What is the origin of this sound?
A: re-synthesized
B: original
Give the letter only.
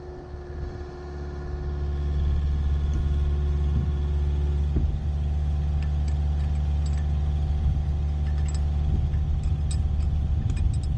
B